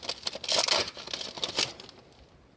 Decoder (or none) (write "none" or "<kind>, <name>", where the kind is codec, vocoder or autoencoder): none